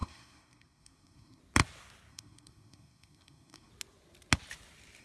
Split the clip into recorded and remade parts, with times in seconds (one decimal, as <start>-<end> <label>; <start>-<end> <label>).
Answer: 0.0-1.4 remade; 1.4-2.1 recorded; 2.1-3.7 remade; 3.7-5.0 recorded